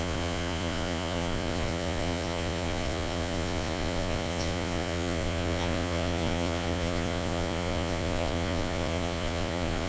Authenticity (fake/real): fake